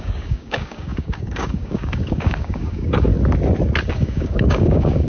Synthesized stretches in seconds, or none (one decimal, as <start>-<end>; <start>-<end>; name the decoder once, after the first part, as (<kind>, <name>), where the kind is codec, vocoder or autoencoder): 0.0-3.1 (codec, DAC); 3.9-5.1